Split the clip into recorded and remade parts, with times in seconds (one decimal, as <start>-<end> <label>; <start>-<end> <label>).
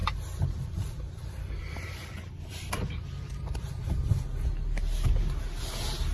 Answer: 0.0-3.7 remade; 3.7-6.1 recorded